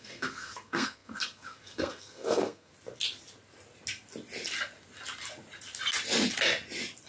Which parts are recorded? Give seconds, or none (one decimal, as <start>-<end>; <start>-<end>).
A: 2.7-7.1